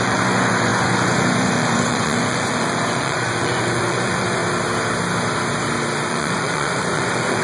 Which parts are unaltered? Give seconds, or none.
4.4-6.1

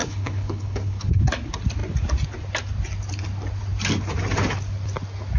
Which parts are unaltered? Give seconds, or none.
1.2-5.4

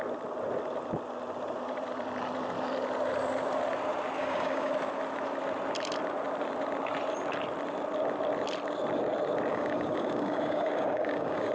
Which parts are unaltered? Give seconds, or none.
0.0-4.2; 4.7-9.5